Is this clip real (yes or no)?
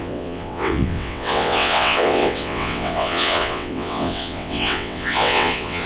no